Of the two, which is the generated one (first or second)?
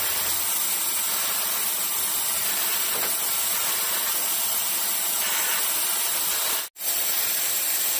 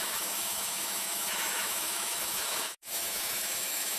second